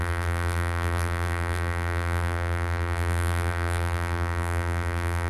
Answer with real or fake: fake